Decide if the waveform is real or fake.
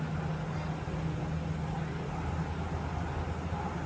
real